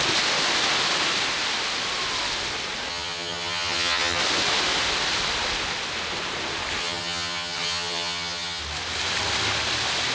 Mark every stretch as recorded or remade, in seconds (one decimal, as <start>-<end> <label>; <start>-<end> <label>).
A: 0.0-2.9 recorded; 2.9-4.2 remade; 4.2-6.8 recorded; 6.8-8.6 remade; 8.6-10.1 recorded